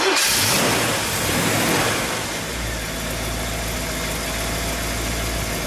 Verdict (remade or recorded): recorded